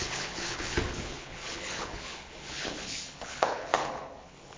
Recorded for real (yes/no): no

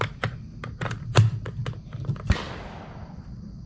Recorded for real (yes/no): yes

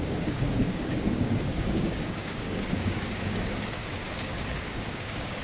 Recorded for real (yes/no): no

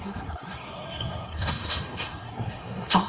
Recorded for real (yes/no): no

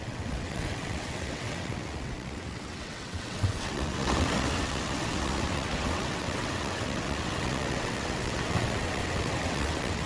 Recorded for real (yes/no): no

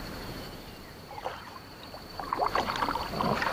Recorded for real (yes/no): no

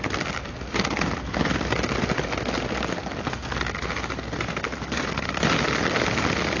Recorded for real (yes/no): yes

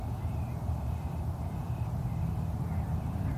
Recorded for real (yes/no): no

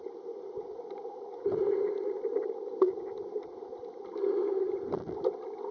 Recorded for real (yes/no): yes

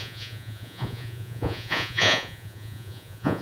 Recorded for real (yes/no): no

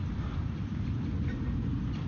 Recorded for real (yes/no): yes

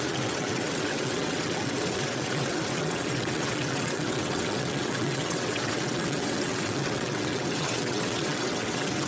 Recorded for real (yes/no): no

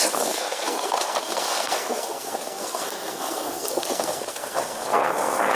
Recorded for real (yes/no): no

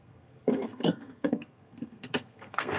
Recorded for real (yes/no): no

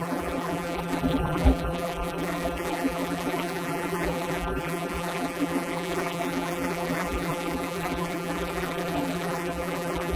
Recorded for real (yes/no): no